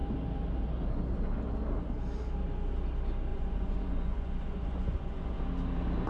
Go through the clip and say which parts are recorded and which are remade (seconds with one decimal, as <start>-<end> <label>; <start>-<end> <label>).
0.0-3.3 recorded; 3.3-5.4 remade; 5.4-6.1 recorded